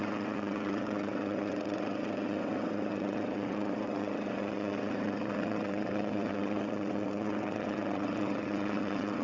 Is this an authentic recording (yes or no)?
no